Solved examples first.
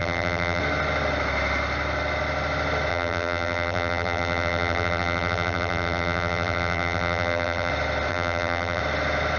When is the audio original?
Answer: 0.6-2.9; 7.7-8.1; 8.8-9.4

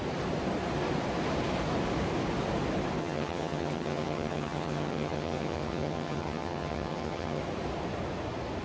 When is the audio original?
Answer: 0.0-3.0; 7.4-8.6

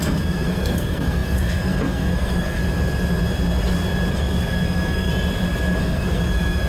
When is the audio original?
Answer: 2.6-4.1; 5.1-5.8

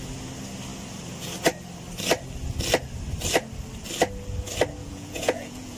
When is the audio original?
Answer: 0.0-4.8